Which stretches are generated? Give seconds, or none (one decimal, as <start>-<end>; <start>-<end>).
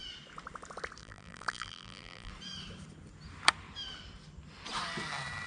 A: 1.0-2.3